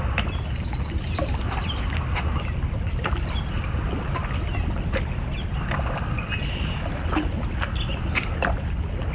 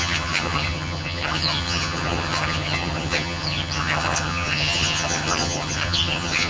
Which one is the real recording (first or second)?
first